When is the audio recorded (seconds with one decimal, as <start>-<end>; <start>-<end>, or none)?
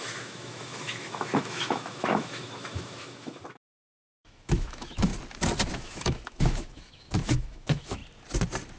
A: 5.1-5.7; 8.0-8.8